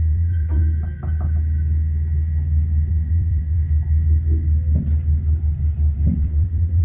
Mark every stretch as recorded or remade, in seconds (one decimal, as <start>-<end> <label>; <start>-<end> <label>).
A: 0.0-0.6 remade; 0.6-2.9 recorded; 2.9-3.6 remade; 3.6-6.2 recorded; 6.2-6.8 remade